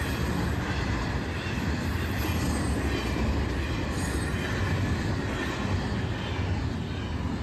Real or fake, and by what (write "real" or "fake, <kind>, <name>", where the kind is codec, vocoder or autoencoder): real